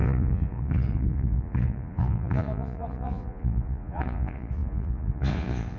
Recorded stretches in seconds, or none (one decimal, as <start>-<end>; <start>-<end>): none